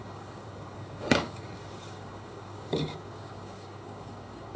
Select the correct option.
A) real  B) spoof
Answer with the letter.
B